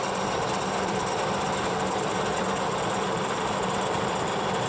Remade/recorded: recorded